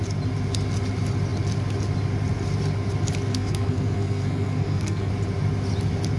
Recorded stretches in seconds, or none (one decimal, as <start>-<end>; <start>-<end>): 0.0-3.3; 5.1-6.2